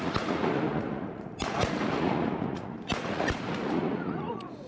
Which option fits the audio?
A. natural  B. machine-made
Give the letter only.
B